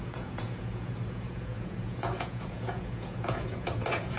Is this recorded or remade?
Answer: remade